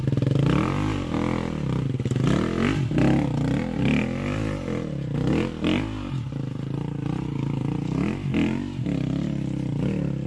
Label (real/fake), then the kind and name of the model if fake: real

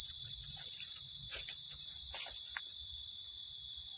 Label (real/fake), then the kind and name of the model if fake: real